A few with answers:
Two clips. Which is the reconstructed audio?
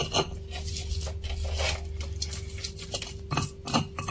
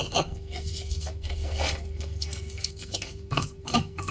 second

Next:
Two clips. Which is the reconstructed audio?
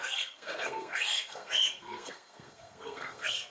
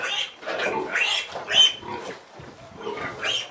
first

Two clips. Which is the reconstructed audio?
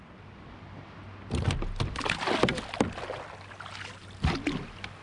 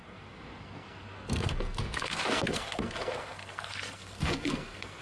second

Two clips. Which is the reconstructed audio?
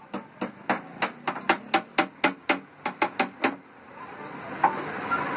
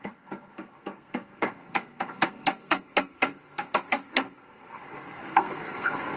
second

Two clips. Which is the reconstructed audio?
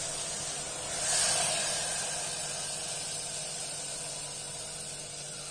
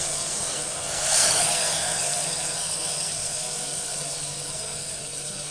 second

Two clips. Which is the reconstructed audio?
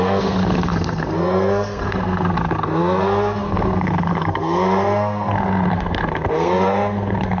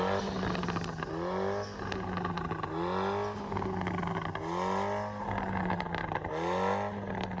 first